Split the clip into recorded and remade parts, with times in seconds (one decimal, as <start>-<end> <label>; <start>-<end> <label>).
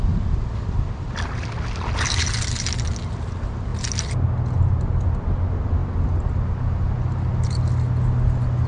0.0-8.7 recorded